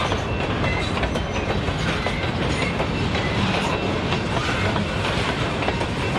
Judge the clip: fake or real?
real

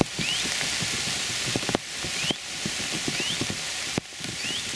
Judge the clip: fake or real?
real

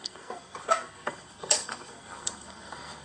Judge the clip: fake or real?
fake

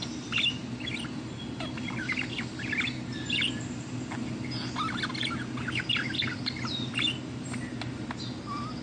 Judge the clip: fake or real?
real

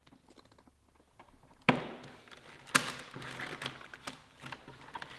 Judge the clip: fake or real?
real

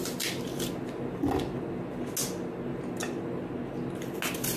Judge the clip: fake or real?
real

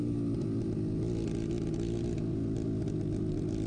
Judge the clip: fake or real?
real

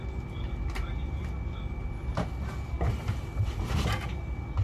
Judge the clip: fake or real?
real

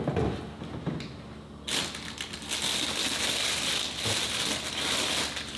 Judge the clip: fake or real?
real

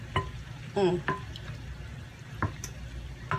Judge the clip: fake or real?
real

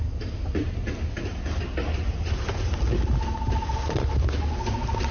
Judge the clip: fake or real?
real